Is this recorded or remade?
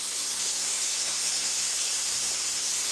remade